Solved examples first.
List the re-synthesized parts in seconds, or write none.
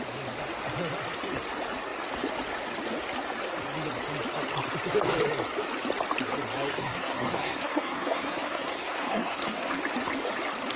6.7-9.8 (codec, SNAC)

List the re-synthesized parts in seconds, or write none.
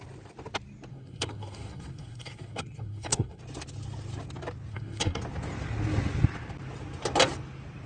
0.9-3.4 (codec, SNAC); 4.7-5.2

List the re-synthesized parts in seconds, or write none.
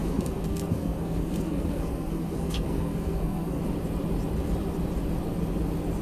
0.0-3.6 (codec, SNAC)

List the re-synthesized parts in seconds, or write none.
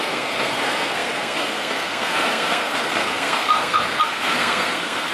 0.0-5.1 (codec, SNAC)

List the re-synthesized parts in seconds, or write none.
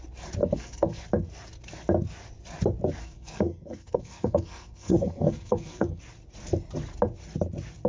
0.4-1.0 (codec, SNAC); 3.0-6.0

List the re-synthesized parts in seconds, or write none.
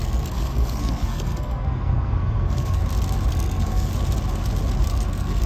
0.0-2.8 (codec, SNAC); 3.3-3.9; 4.9-5.5